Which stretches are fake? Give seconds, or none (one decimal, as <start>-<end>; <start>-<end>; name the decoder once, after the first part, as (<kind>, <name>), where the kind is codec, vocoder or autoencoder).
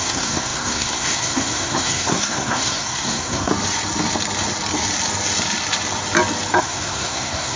0.0-3.5 (codec, SNAC); 6.6-7.6